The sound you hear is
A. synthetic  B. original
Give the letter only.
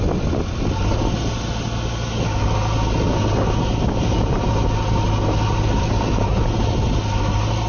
B